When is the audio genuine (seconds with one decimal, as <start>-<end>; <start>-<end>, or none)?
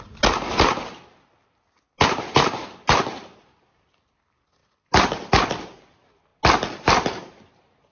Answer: 0.0-7.9